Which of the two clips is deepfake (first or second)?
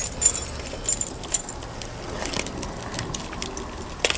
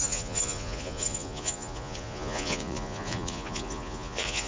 second